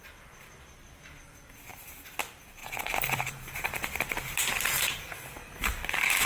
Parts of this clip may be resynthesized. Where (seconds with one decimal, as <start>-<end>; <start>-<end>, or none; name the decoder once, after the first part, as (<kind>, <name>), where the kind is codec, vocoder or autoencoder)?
1.7-2.2 (vocoder, BigVGAN v2); 2.6-6.3